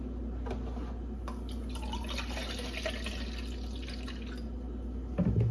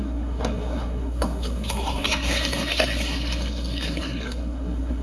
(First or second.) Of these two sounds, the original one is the first